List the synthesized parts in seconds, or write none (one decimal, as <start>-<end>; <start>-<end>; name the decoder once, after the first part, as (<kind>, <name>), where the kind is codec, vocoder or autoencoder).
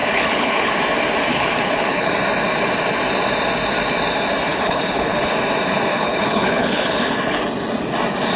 0.0-0.7 (codec, HILCodec); 1.3-2.1; 4.5-5.3; 5.9-7.4